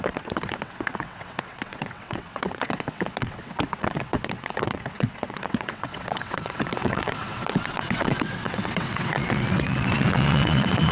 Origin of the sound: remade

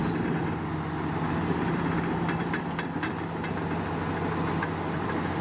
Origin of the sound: recorded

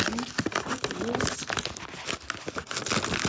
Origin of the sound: recorded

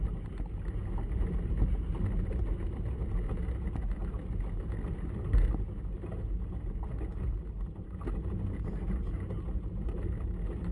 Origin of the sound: recorded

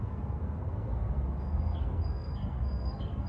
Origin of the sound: remade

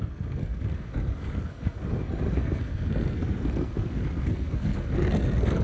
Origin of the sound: remade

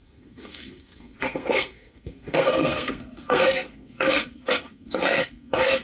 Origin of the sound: remade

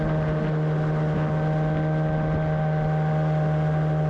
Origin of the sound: recorded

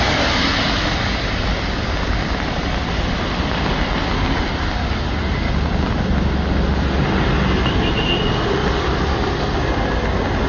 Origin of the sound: recorded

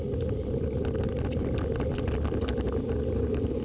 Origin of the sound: recorded